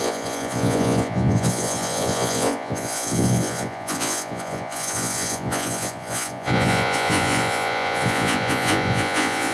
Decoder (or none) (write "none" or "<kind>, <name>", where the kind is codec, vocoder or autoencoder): vocoder, Vocos